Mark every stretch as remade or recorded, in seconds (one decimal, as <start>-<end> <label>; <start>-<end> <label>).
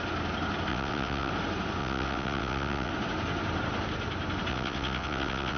0.0-0.7 recorded; 0.7-1.3 remade; 1.3-1.8 recorded; 1.8-2.9 remade; 2.9-4.5 recorded; 4.5-5.6 remade